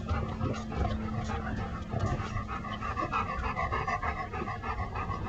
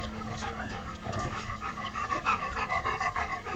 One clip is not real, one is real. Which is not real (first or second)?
second